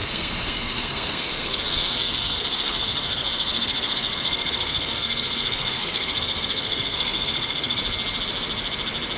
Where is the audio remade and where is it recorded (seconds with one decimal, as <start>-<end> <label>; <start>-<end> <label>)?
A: 0.0-7.8 remade; 7.8-9.2 recorded